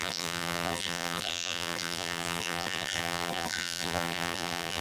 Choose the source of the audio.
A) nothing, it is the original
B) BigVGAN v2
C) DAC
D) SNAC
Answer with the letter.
B